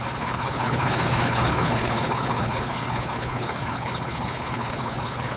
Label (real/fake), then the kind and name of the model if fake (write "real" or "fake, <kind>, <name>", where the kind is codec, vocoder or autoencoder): fake, codec, HILCodec